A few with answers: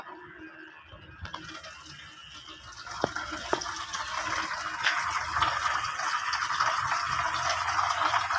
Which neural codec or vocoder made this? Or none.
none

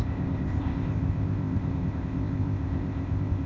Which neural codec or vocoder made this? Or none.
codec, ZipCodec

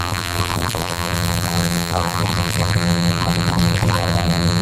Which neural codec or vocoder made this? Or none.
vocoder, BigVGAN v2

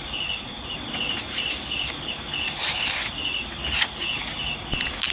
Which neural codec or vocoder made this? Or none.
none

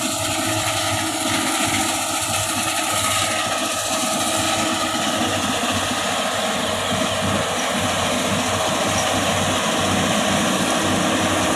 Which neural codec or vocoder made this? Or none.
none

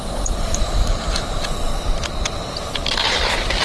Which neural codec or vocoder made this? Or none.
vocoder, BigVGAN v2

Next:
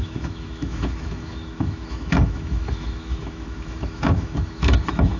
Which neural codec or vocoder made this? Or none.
autoencoder, DAC-VAE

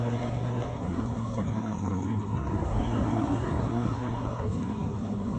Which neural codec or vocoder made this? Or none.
codec, SNAC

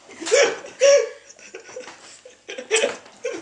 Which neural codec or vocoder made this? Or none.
none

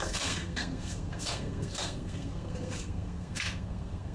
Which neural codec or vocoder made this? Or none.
codec, SNAC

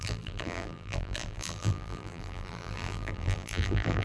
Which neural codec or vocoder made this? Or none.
vocoder, BigVGAN v2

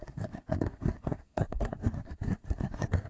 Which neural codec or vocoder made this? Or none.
codec, SNAC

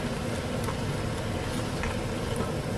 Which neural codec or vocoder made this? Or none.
none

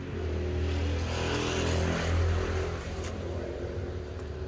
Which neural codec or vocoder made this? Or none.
none